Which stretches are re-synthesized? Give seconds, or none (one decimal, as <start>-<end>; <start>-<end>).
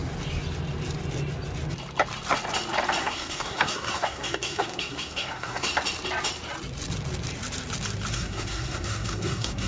3.0-5.7; 8.1-9.7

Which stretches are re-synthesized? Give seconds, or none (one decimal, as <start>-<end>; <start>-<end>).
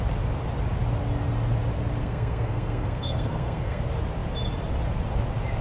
2.0-3.8